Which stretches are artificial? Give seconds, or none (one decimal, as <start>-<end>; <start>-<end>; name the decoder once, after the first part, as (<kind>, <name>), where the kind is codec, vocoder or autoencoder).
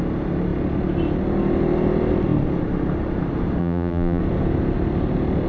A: 3.6-4.2 (vocoder, BigVGAN v2)